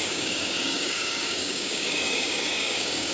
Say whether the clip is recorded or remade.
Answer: remade